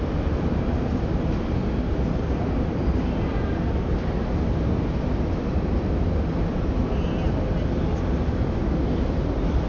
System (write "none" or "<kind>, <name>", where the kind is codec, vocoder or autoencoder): none